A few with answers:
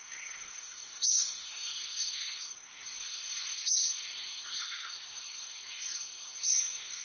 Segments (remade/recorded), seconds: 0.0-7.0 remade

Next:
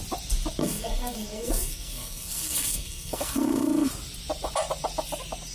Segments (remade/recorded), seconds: 0.0-0.6 recorded; 0.6-3.9 remade; 3.9-5.5 recorded

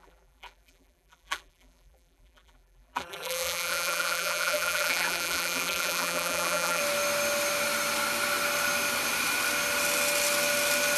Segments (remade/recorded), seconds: 0.0-6.8 remade; 6.8-11.0 recorded

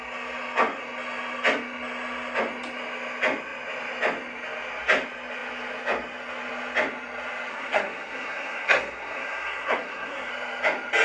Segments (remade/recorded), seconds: 0.0-7.5 recorded; 7.5-10.3 remade; 10.3-11.0 recorded

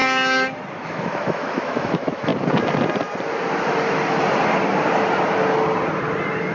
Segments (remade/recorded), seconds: 0.0-0.7 recorded; 0.7-2.3 remade; 2.3-6.5 recorded